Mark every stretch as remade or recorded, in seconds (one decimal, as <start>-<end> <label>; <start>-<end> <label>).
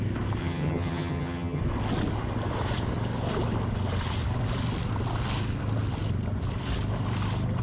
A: 0.0-0.4 recorded; 0.4-1.6 remade; 1.6-7.6 recorded